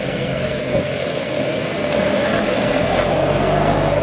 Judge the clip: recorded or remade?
remade